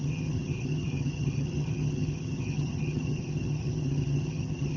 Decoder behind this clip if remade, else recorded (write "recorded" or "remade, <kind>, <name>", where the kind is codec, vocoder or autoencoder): remade, vocoder, HiFi-GAN